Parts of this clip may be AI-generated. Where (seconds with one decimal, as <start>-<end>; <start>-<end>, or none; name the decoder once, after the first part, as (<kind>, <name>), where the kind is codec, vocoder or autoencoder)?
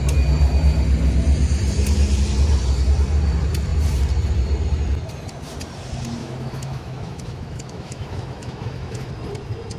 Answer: 6.2-9.1 (autoencoder, DAC-VAE)